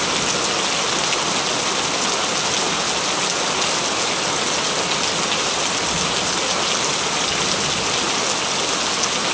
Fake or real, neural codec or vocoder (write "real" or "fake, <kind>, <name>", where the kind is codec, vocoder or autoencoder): real